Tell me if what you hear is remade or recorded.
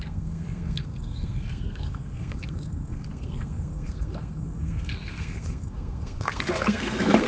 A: remade